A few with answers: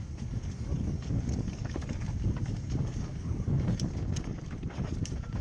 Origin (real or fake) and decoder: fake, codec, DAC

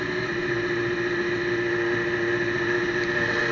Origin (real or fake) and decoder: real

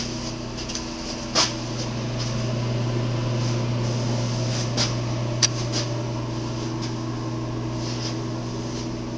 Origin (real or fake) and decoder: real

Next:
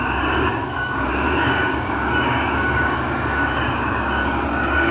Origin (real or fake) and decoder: fake, codec, DAC